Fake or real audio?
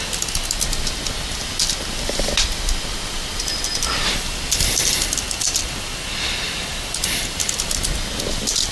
real